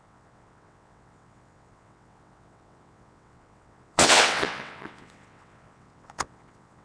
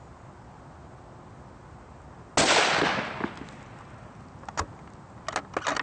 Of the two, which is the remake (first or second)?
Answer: first